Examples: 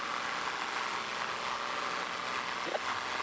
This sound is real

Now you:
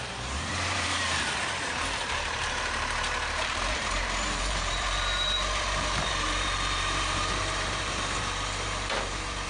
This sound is fake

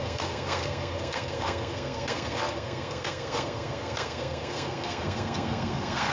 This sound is fake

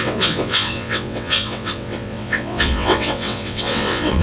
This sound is fake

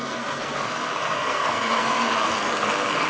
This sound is fake